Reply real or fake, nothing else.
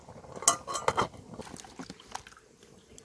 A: real